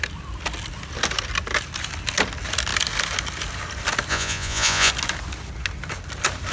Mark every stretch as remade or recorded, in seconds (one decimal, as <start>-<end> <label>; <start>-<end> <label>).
0.0-4.1 recorded; 4.1-4.9 remade; 4.9-6.5 recorded